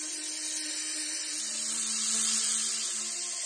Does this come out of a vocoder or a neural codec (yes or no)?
no